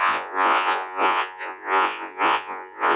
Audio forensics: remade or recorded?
remade